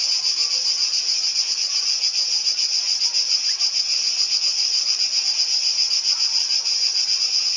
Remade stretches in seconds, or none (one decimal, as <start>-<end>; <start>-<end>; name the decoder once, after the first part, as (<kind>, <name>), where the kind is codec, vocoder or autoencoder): none